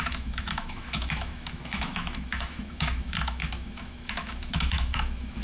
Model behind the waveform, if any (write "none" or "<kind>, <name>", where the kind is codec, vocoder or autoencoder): autoencoder, DAC-VAE